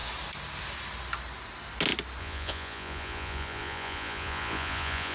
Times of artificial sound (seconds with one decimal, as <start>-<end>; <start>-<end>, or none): 2.2-5.1